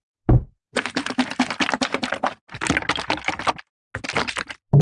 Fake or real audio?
real